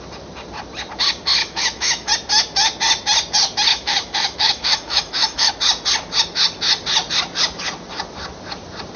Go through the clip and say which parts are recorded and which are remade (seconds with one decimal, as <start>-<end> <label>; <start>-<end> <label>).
0.0-1.4 recorded; 1.4-2.1 remade; 2.1-3.7 recorded; 3.7-5.5 remade; 5.5-9.0 recorded